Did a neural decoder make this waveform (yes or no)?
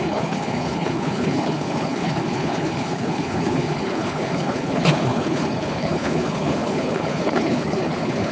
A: yes